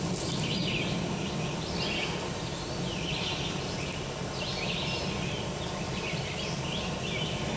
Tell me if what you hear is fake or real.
real